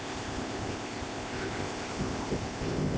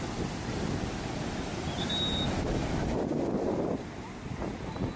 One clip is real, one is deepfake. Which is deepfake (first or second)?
first